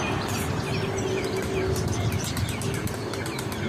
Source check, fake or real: real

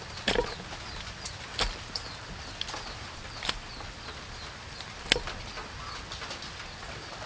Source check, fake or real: real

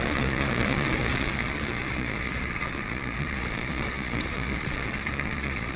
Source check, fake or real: fake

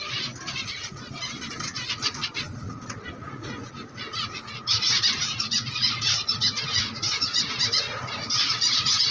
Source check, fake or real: fake